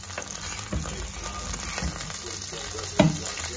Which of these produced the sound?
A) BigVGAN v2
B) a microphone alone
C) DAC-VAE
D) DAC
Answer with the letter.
B